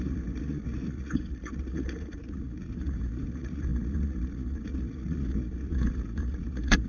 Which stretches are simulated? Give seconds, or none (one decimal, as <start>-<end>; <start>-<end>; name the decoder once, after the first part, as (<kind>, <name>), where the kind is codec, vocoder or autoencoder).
0.0-6.9 (vocoder, Vocos)